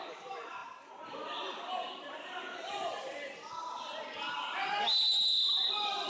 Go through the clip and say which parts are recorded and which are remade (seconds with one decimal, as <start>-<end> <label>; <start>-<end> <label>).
0.0-6.1 recorded